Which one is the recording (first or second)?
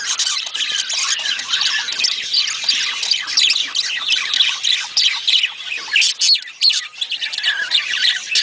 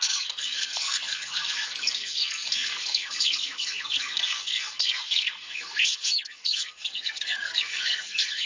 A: first